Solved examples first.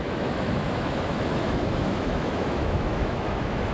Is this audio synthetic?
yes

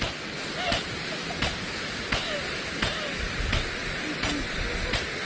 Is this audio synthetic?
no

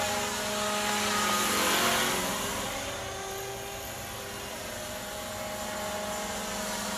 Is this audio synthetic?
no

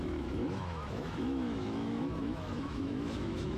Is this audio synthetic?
yes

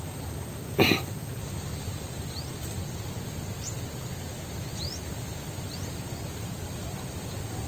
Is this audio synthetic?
no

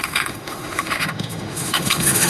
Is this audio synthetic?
yes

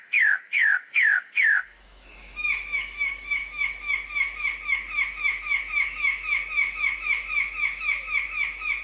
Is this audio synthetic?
yes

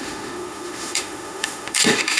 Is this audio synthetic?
yes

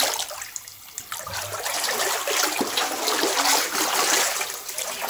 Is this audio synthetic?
no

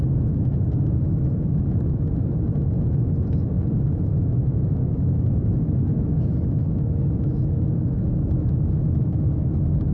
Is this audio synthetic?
yes